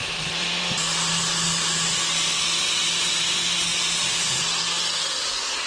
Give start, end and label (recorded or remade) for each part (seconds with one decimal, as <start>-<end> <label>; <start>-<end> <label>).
0.0-5.7 recorded